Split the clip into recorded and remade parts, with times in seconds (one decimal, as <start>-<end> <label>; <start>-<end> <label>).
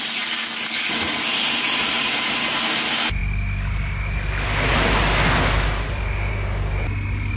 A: 0.0-1.3 recorded; 1.3-2.6 remade; 2.6-7.4 recorded